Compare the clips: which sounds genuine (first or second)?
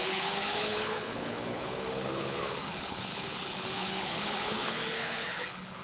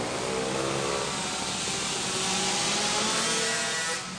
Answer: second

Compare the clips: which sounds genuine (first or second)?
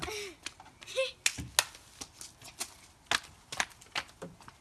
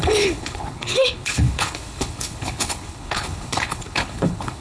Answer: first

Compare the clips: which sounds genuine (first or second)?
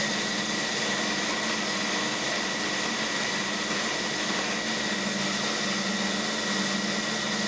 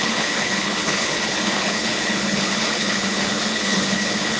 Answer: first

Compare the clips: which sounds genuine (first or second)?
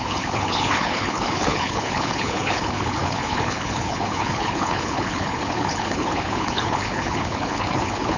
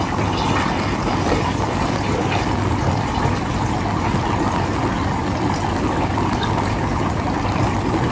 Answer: second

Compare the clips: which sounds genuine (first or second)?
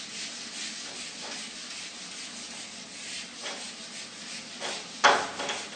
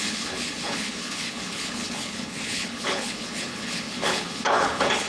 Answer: first